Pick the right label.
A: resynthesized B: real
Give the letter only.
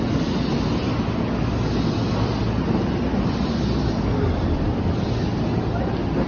B